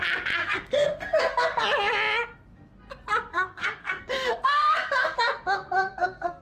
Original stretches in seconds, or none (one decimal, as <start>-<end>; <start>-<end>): 0.0-0.4; 1.6-3.3